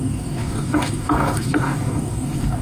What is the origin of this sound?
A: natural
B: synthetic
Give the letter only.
B